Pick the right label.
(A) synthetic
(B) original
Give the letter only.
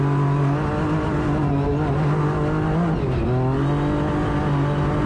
B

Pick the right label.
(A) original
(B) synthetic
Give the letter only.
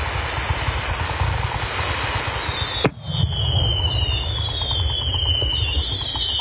A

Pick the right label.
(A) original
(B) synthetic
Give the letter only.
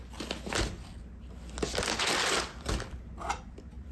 A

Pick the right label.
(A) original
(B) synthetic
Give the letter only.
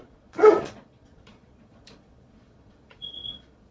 B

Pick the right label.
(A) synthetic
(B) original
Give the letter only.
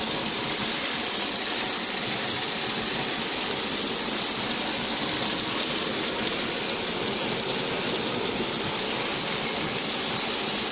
B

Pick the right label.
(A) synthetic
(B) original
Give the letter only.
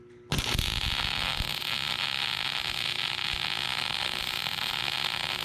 B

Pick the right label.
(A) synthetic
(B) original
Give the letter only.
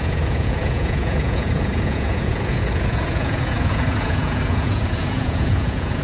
A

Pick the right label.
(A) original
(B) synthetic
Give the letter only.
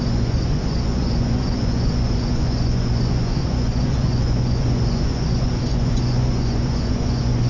B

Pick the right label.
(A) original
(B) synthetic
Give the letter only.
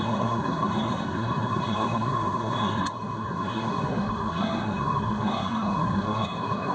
B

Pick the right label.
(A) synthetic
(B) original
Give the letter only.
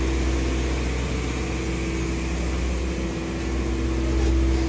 B